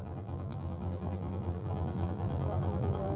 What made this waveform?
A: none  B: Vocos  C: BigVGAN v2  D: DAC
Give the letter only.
C